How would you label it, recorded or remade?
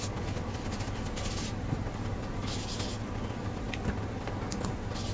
recorded